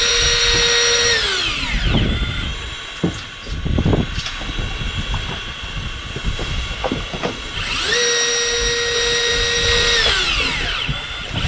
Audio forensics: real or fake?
real